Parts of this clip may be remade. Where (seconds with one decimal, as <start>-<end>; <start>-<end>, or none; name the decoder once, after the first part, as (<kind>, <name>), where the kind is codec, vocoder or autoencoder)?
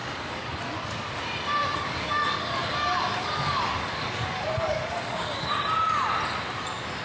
0.0-0.6 (codec, DAC); 1.6-5.5